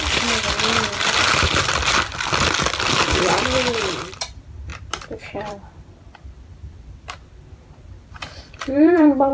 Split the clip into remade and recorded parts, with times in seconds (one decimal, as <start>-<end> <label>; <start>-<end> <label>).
0.0-4.7 recorded; 4.7-9.3 remade